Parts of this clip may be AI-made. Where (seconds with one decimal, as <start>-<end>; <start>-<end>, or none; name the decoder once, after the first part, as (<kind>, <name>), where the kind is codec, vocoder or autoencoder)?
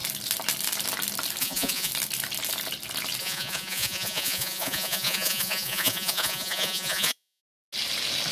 1.4-1.9 (vocoder, Vocos); 3.2-7.4